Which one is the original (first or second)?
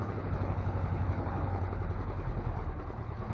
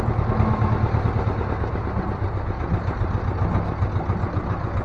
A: second